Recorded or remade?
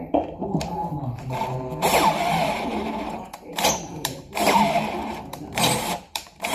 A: remade